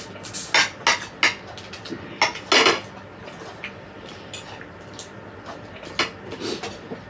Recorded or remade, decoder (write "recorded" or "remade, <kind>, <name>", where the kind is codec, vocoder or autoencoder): recorded